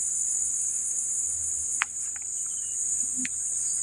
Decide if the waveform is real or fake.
fake